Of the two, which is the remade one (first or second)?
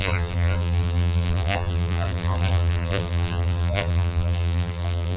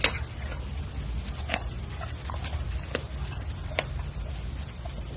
first